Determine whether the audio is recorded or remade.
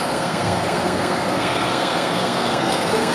remade